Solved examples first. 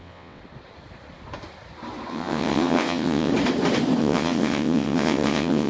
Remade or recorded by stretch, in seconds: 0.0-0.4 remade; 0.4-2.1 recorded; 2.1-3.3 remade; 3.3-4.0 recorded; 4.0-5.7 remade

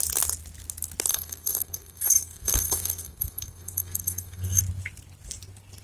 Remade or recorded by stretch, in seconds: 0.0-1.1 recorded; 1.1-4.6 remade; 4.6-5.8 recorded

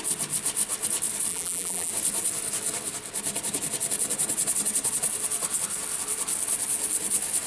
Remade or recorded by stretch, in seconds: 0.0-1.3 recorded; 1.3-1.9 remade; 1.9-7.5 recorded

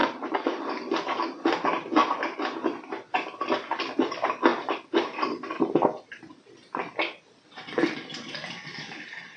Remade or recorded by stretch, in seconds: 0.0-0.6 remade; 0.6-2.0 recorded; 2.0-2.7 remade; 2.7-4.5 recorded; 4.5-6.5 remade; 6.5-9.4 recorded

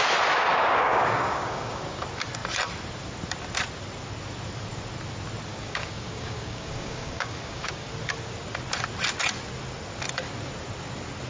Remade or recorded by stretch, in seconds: 0.0-0.5 recorded; 0.5-2.0 remade; 2.0-5.5 recorded; 5.5-7.9 remade; 7.9-11.3 recorded

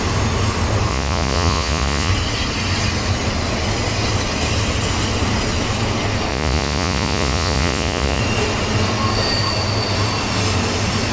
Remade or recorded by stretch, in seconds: 0.0-0.9 recorded; 0.9-2.1 remade; 2.1-6.3 recorded; 6.3-8.2 remade; 8.2-11.1 recorded